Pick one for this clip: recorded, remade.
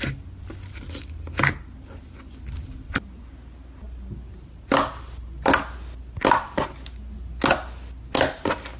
recorded